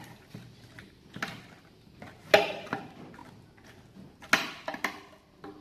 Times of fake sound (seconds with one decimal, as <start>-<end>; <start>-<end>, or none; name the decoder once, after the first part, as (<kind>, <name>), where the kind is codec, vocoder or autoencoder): none

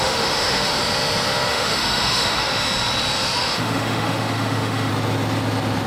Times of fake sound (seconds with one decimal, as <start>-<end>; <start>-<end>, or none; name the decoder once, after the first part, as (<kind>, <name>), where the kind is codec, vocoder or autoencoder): 0.0-0.8 (autoencoder, DAC-VAE); 1.5-2.5; 3.4-4.9

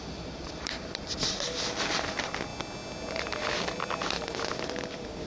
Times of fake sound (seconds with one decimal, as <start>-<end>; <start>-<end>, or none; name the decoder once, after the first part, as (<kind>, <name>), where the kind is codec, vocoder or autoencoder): 0.0-2.5 (vocoder, BigVGAN v2); 4.7-5.3